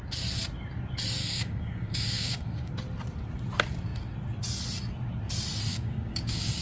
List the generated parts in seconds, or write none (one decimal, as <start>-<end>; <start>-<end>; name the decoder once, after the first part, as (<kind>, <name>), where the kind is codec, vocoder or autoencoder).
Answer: 1.2-2.7 (codec, DAC); 5.7-6.6